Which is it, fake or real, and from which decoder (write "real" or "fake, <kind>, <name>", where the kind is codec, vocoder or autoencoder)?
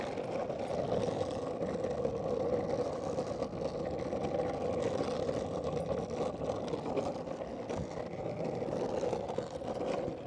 real